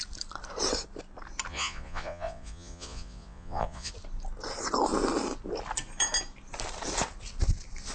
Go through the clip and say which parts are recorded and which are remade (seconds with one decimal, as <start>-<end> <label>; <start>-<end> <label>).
0.0-1.5 recorded; 1.5-3.9 remade; 3.9-7.9 recorded